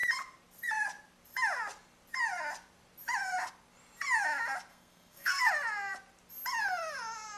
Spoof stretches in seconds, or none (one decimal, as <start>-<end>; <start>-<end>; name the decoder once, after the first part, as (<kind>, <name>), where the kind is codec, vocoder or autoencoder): 4.7-5.5 (codec, SNAC)